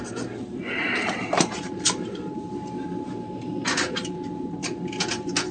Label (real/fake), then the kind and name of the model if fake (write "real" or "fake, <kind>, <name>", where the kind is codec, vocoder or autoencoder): fake, vocoder, BigVGAN v2